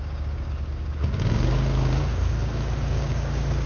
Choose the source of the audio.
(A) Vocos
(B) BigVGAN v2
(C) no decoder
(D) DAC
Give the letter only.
D